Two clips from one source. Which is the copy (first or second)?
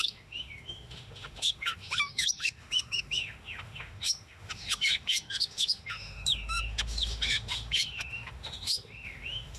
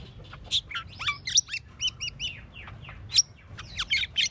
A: first